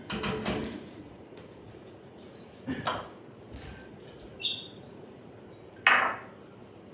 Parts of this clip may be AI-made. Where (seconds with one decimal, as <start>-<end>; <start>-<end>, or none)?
0.6-2.8; 3.9-5.3